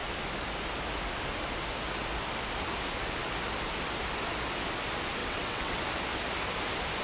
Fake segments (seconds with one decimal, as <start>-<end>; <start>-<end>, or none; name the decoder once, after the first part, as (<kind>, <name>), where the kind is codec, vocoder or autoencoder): 5.2-5.8 (vocoder, WaveNeXt)